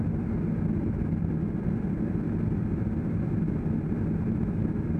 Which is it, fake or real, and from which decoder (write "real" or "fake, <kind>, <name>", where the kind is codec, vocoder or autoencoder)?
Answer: real